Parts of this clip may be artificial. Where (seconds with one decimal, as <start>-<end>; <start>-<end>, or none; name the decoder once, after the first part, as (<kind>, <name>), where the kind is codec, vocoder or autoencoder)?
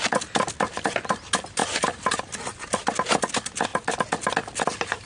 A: none